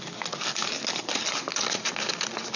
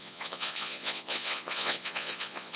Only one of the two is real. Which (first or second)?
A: first